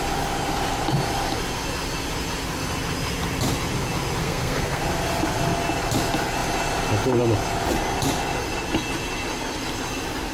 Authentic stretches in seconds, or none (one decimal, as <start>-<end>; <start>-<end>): 0.0-4.2; 4.8-10.3